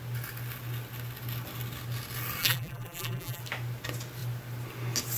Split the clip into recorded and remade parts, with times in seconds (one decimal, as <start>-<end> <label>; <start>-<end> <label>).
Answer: 0.0-2.4 recorded; 2.4-3.4 remade; 3.4-5.2 recorded